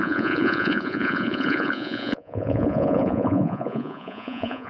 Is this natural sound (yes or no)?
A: no